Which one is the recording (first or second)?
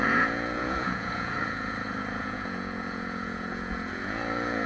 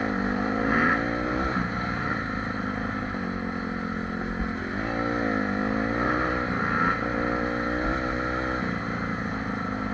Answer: second